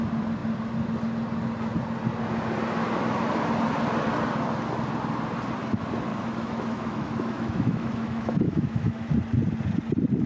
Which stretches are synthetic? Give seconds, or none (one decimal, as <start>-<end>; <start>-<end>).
6.1-9.1